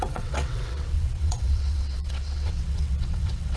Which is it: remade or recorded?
remade